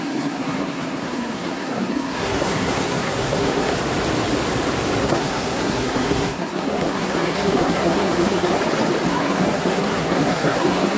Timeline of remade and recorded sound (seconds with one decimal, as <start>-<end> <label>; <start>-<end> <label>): 0.0-3.7 remade; 3.7-5.0 recorded; 5.0-8.6 remade; 8.6-9.1 recorded; 9.1-11.0 remade